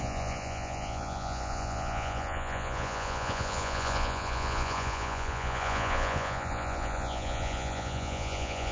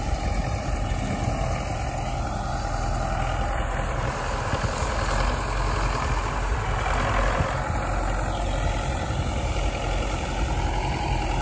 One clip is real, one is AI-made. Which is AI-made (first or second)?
first